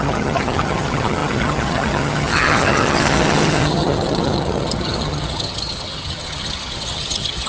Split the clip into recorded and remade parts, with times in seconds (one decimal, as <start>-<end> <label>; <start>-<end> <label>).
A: 0.0-7.5 remade